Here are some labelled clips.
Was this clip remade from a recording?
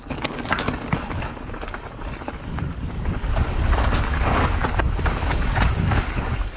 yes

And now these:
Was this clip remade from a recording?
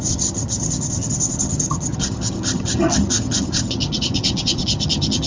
yes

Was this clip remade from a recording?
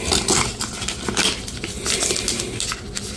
no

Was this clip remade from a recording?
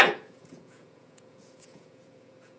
yes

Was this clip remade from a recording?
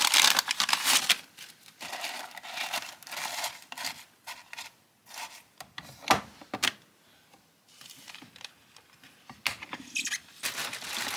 yes